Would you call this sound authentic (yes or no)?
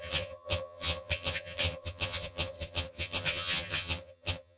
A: no